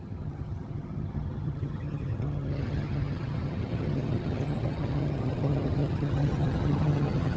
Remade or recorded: remade